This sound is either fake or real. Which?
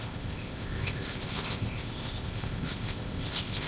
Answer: fake